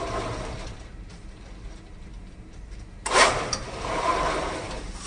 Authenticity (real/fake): fake